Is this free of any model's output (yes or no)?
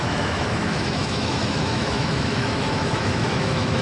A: no